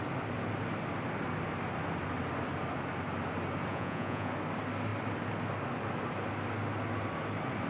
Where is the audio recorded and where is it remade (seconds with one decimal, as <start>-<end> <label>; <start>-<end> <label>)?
0.0-3.7 recorded; 3.7-4.3 remade; 4.3-7.7 recorded